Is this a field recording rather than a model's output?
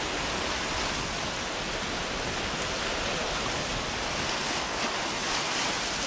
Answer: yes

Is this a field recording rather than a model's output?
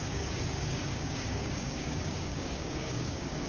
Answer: no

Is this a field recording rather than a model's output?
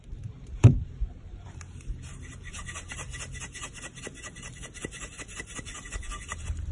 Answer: no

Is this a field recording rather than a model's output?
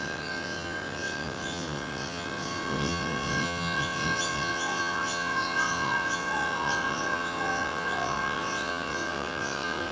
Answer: no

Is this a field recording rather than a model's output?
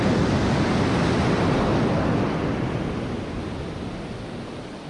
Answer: yes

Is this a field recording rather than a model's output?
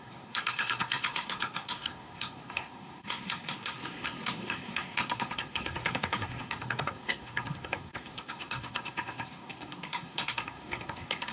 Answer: no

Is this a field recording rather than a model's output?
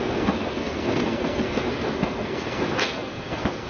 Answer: no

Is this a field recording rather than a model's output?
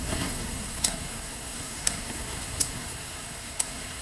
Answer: no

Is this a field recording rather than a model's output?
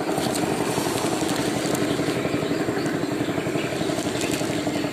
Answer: yes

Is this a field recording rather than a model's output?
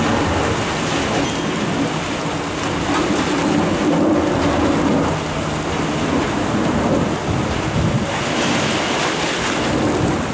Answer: yes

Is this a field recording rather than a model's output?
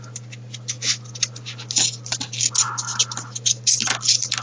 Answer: yes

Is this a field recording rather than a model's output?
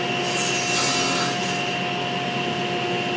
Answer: yes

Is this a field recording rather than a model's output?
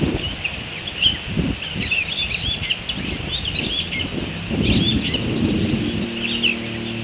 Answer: yes